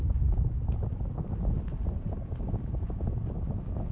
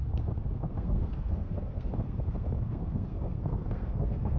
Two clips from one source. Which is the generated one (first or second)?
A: second